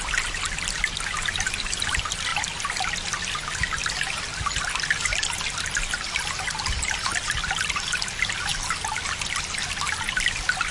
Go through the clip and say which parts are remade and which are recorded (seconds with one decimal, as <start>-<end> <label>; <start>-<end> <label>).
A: 0.0-10.7 recorded